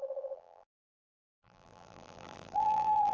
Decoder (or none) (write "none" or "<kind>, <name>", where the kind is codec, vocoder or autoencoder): vocoder, BigVGAN v2